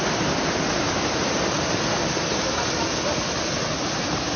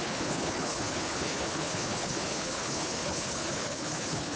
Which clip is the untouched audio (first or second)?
first